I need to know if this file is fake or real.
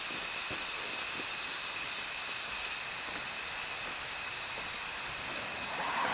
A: real